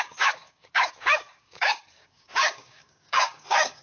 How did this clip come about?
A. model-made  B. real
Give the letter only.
A